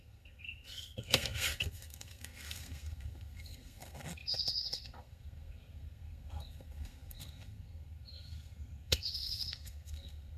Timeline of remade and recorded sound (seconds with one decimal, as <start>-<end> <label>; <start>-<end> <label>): 0.0-10.4 remade